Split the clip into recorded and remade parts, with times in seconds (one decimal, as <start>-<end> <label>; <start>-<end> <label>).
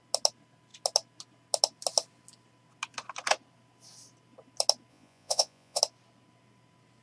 0.0-4.9 recorded; 4.9-5.8 remade; 5.8-7.0 recorded